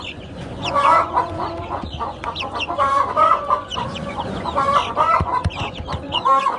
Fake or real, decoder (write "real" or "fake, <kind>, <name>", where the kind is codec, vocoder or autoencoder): fake, vocoder, Vocos